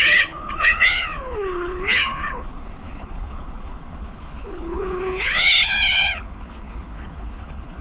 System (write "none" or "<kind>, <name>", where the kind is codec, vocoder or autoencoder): codec, HILCodec